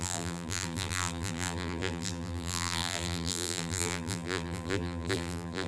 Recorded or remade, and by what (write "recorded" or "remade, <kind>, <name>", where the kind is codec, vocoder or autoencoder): remade, vocoder, BigVGAN v2